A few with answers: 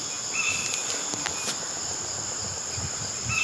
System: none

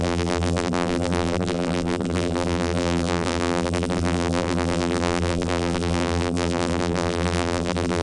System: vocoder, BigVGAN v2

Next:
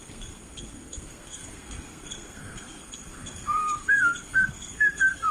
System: codec, SNAC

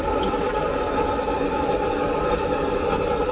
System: none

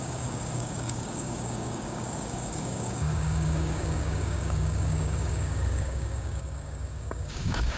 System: codec, DAC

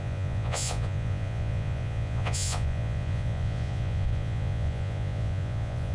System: vocoder, Vocos